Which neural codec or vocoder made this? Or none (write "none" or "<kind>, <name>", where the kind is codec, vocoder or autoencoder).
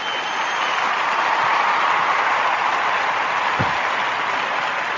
none